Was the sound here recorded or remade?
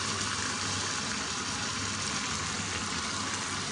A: recorded